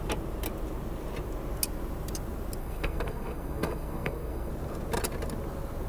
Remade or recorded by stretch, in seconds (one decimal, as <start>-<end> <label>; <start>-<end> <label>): 0.0-2.6 recorded; 2.6-4.5 remade; 4.5-5.9 recorded

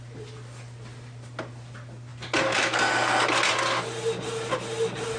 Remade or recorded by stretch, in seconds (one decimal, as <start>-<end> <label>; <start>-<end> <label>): 0.0-5.2 recorded